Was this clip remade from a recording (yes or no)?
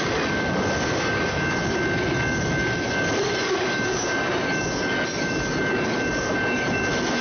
no